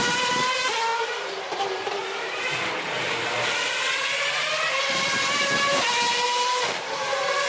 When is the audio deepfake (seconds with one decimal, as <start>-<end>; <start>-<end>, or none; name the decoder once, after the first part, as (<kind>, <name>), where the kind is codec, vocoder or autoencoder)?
0.9-2.5 (vocoder, BigVGAN v2); 6.1-7.5